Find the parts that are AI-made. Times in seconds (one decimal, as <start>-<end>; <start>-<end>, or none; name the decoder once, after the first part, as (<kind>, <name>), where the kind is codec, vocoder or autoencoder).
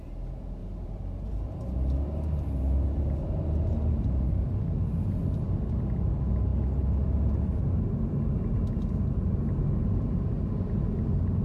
0.6-1.3 (vocoder, BigVGAN v2); 9.8-10.3